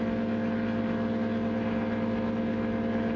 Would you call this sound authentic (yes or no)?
yes